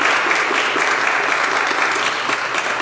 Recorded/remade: recorded